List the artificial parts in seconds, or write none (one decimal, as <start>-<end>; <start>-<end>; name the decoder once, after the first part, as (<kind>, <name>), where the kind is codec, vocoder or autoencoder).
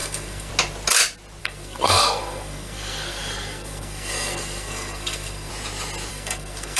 0.0-0.5 (codec, SNAC); 1.4-5.5; 6.1-6.8